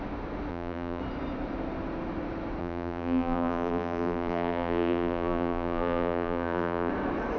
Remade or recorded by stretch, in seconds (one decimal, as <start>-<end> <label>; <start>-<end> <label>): 0.0-0.5 recorded; 0.5-1.0 remade; 1.0-2.6 recorded; 2.6-6.9 remade; 6.9-7.4 recorded